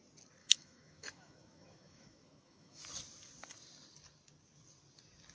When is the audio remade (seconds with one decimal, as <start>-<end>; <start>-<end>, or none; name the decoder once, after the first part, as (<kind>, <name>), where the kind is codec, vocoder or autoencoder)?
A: 0.4-2.8 (autoencoder, DAC-VAE)

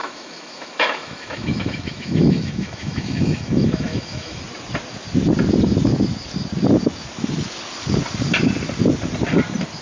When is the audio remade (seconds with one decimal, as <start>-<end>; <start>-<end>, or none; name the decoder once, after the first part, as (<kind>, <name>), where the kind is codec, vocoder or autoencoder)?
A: 0.0-4.4 (autoencoder, DAC-VAE)

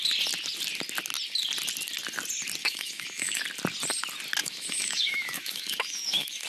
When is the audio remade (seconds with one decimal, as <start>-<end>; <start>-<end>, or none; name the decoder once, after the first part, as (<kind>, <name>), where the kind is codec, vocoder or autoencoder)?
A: 2.6-3.4 (autoencoder, DAC-VAE); 4.4-6.5